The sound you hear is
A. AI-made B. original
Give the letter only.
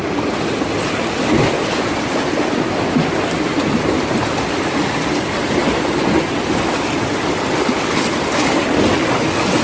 B